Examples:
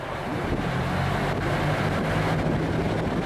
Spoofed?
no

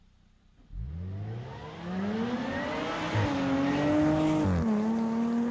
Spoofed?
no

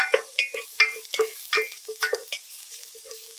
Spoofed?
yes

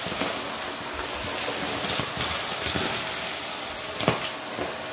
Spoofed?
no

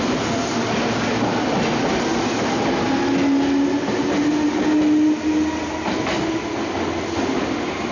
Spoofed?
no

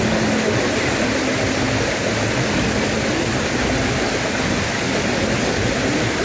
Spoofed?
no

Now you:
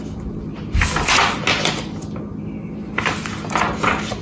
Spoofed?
no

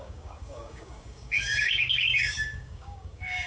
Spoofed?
yes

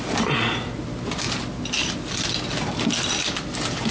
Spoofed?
no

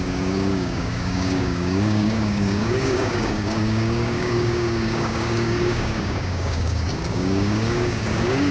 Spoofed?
yes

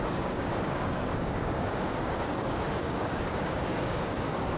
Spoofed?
yes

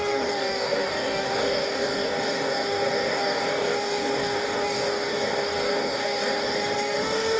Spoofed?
yes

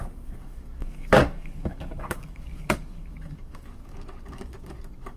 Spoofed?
yes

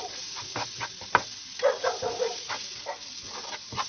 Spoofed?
no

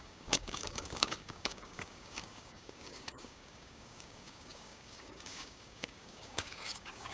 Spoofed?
yes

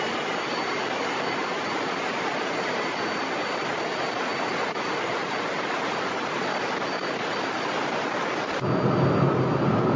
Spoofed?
no